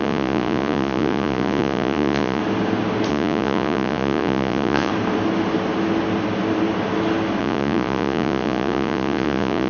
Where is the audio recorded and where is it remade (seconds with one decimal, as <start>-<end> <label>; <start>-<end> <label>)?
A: 0.0-2.4 remade; 2.4-3.1 recorded; 3.1-4.9 remade; 4.9-7.4 recorded; 7.4-9.7 remade